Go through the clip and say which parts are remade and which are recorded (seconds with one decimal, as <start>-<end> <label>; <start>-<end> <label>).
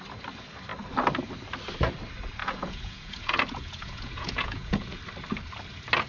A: 0.0-2.4 recorded; 2.4-5.0 remade; 5.0-6.1 recorded